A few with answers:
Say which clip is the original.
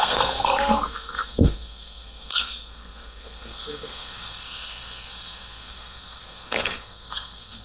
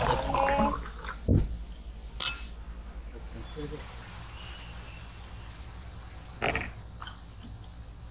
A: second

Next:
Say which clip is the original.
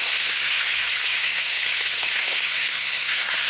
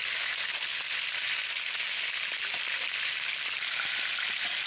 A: second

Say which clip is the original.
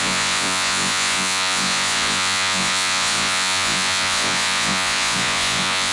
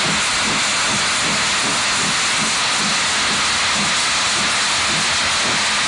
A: second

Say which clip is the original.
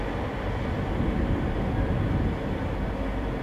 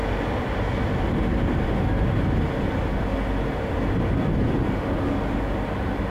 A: second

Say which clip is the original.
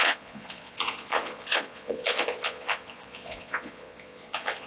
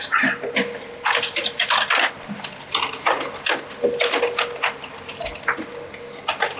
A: second